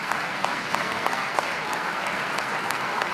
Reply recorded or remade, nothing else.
remade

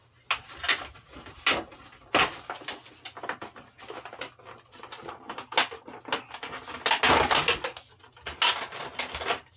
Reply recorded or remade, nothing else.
recorded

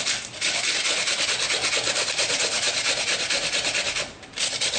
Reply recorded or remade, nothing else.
recorded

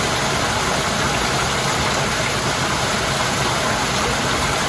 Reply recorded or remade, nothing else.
recorded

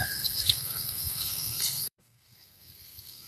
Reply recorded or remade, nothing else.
remade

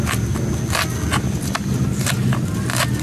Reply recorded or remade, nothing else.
recorded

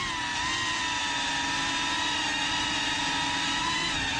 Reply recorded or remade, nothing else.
recorded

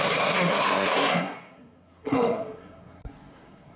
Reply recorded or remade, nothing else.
remade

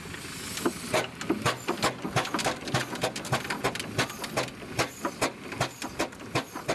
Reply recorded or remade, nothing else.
recorded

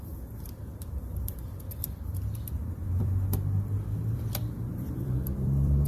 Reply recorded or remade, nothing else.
remade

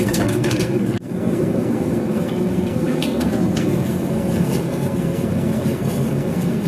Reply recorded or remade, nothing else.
remade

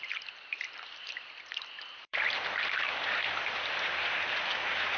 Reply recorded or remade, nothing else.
remade